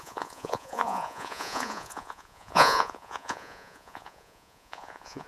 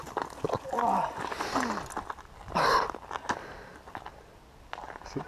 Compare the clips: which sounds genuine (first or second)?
second